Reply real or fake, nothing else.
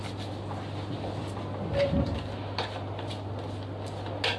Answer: real